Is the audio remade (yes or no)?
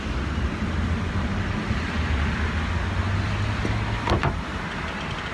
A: no